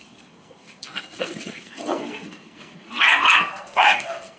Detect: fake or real fake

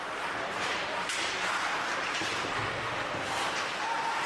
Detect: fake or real fake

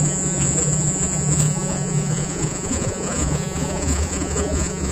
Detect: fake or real fake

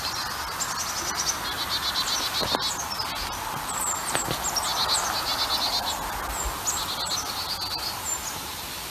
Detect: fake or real real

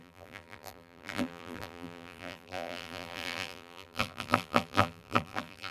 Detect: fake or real fake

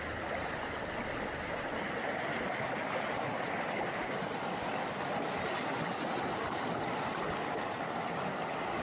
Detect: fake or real real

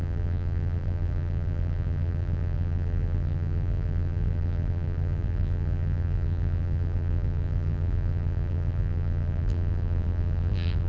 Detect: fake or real fake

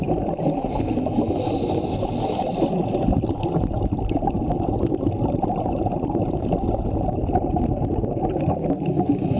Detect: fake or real real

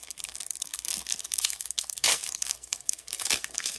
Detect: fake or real fake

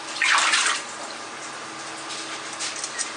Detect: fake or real real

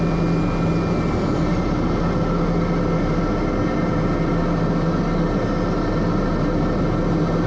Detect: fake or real real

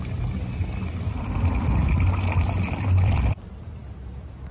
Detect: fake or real real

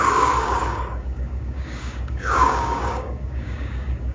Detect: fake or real fake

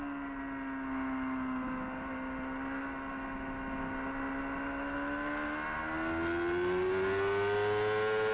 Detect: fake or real real